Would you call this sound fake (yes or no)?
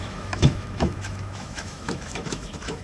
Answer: yes